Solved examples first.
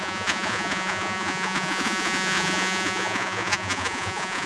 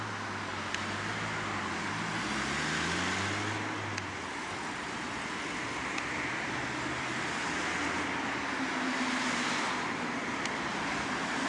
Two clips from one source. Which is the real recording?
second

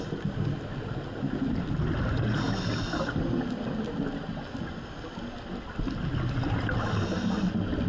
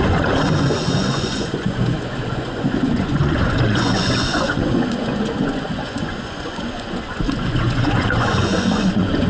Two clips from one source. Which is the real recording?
first